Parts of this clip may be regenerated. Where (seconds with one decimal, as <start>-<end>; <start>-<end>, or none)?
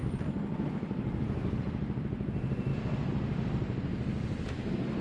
none